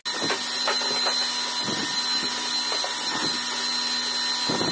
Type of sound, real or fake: real